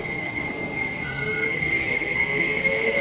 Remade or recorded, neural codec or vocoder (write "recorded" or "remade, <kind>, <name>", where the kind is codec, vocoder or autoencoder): remade, codec, SNAC